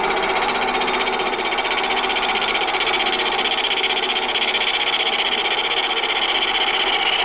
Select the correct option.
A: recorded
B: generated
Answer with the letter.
A